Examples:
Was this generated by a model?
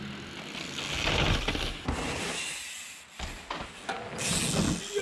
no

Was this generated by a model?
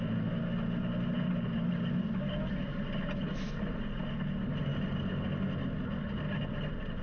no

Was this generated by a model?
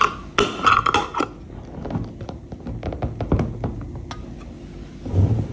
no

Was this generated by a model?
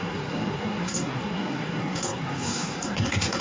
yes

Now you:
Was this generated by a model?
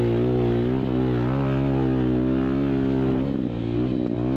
no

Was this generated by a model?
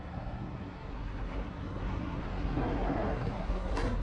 yes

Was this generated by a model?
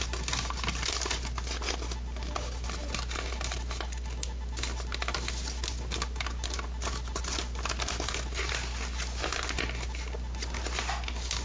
no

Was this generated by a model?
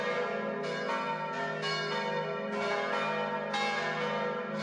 no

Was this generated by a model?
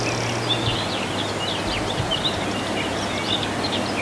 no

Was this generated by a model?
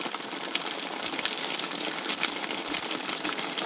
no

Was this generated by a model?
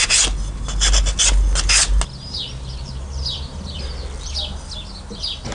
no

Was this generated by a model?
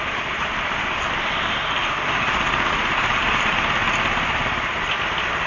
no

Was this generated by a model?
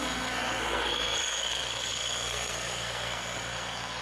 yes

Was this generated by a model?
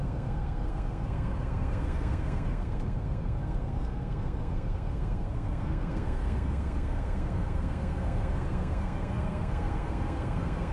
yes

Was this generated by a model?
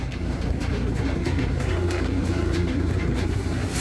yes